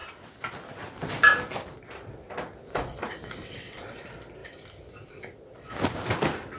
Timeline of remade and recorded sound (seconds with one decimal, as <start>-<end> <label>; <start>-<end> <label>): 0.0-3.4 recorded; 3.4-4.0 remade; 4.0-6.6 recorded